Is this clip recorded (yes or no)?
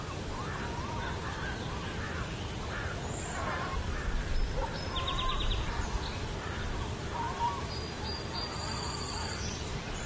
no